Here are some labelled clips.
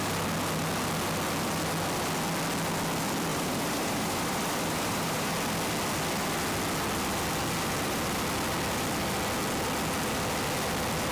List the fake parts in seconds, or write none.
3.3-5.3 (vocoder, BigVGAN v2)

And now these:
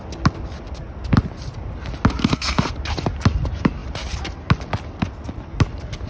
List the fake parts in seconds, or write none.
2.2-2.7 (codec, SNAC)

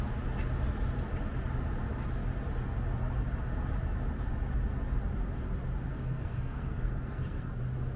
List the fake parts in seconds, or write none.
5.9-7.6 (codec, SNAC)

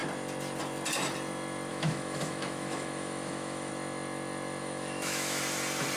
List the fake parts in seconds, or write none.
1.7-3.7 (autoencoder, DAC-VAE); 4.6-5.4

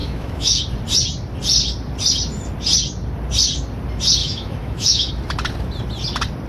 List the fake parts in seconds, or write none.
0.0-0.6 (autoencoder, DAC-VAE); 4.2-5.1